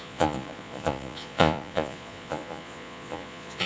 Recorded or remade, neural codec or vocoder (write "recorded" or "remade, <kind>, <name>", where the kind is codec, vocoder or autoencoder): remade, vocoder, Vocos